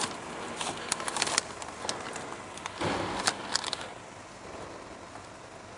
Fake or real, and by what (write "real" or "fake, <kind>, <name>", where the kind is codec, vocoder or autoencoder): real